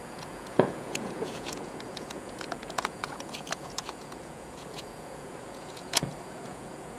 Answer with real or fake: fake